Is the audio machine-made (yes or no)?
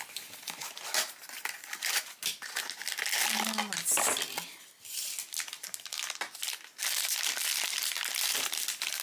no